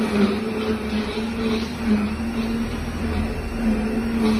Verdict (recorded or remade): recorded